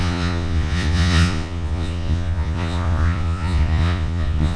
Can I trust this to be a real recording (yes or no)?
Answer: no